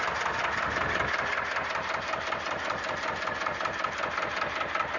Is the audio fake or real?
real